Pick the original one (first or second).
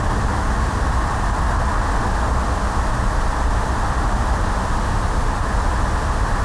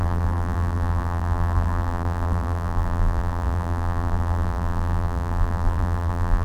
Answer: first